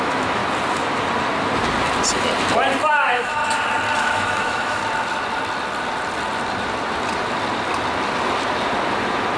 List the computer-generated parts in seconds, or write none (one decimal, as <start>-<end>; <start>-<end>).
0.0-0.4; 2.9-3.4; 4.0-4.8

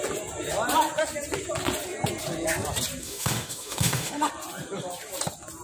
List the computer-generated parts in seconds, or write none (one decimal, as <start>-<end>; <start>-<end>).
3.0-4.3

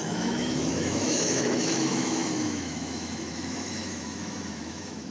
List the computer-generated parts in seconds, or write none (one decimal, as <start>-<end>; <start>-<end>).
0.0-5.1

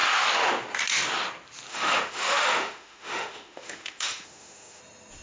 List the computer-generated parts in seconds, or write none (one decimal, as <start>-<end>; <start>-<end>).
1.7-4.8